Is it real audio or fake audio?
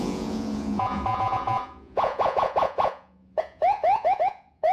fake